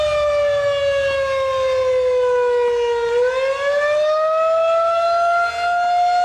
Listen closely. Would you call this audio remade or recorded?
recorded